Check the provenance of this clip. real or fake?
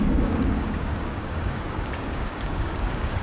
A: fake